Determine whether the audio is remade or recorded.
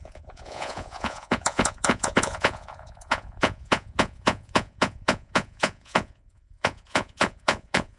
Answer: remade